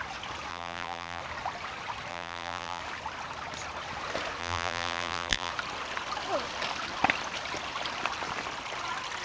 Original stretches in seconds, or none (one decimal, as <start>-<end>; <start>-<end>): 0.0-0.5; 1.2-2.1; 2.8-4.4; 5.5-9.2